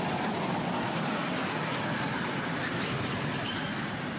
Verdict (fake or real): fake